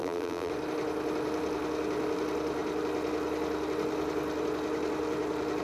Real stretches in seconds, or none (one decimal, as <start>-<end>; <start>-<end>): 0.5-5.6